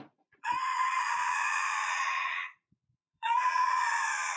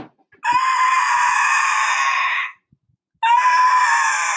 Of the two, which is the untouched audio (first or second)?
second